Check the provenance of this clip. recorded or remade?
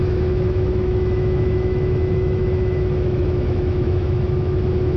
remade